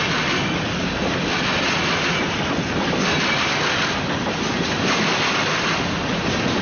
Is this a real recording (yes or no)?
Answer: yes